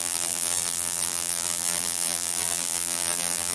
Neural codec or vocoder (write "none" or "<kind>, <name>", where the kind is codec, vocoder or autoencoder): vocoder, BigVGAN v2